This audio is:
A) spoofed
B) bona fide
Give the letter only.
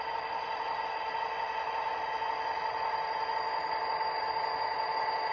B